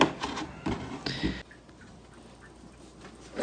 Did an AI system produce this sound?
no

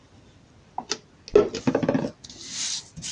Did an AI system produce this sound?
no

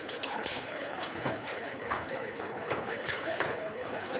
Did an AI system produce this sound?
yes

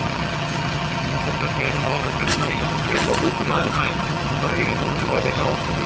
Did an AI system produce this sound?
yes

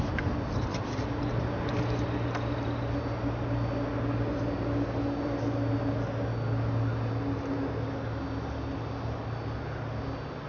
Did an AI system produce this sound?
no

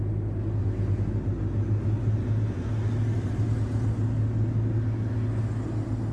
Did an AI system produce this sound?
no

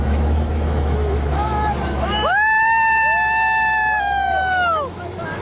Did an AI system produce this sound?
yes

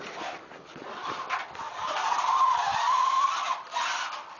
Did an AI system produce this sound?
no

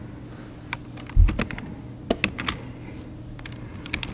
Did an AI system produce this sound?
no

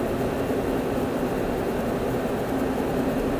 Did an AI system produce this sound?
no